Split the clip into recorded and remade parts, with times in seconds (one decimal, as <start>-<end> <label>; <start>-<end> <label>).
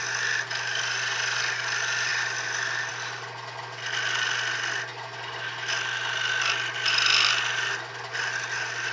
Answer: 0.0-8.9 recorded